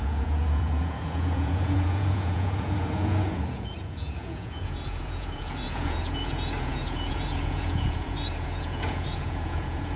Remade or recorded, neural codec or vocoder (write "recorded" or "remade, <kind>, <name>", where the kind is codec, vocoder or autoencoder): remade, vocoder, Vocos